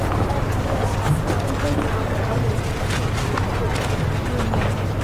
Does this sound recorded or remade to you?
recorded